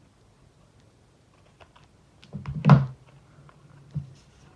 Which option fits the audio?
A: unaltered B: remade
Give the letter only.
A